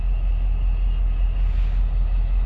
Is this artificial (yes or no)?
no